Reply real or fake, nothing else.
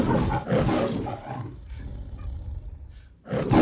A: real